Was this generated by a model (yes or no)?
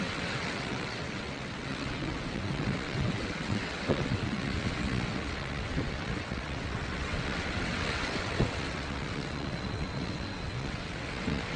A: yes